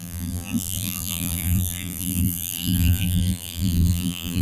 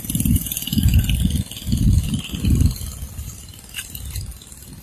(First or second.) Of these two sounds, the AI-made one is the first